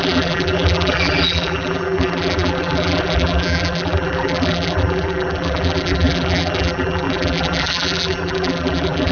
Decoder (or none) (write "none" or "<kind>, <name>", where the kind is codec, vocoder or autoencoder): vocoder, BigVGAN v2